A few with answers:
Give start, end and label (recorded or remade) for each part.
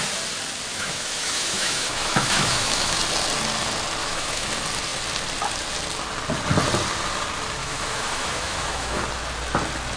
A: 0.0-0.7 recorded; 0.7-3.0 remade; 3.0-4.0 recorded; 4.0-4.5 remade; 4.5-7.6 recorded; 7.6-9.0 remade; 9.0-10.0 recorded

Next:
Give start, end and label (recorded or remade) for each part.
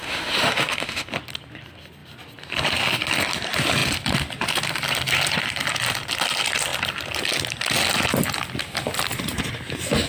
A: 0.0-1.1 remade; 1.1-10.1 recorded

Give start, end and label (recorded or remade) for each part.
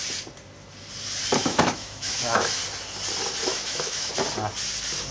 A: 0.0-1.4 recorded; 1.4-2.6 remade; 2.6-3.4 recorded; 3.4-4.1 remade; 4.1-5.1 recorded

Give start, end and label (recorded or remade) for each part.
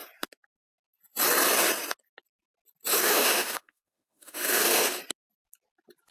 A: 0.0-2.9 recorded; 2.9-5.0 remade; 5.0-6.1 recorded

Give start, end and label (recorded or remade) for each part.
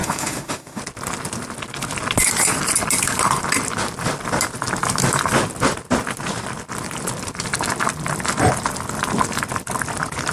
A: 0.0-0.8 remade; 0.8-10.3 recorded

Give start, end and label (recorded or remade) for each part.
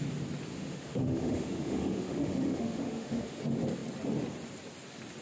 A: 0.0-0.5 recorded; 0.5-3.4 remade; 3.4-5.2 recorded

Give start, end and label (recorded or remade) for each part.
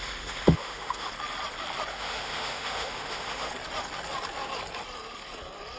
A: 0.0-1.1 remade; 1.1-1.9 recorded; 1.9-3.5 remade; 3.5-5.8 recorded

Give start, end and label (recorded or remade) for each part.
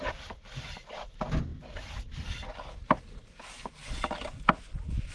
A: 0.0-5.1 recorded